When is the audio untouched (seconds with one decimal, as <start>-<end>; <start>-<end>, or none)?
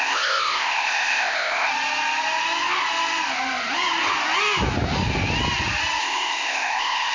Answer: 1.7-6.0